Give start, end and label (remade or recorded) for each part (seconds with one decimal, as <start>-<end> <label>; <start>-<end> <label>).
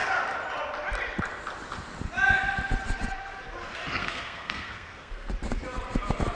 0.0-4.0 recorded; 4.0-5.3 remade; 5.3-6.4 recorded